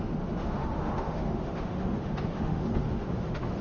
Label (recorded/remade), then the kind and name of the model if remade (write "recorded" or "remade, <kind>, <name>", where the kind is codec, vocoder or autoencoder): remade, autoencoder, DAC-VAE